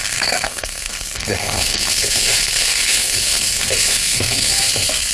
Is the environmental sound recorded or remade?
remade